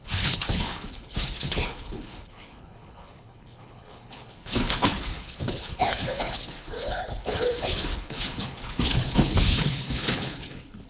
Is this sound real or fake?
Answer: fake